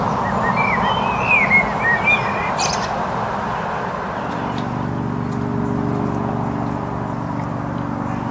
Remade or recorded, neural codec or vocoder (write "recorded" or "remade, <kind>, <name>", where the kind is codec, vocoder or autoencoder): recorded